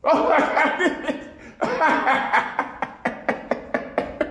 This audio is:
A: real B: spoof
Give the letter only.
B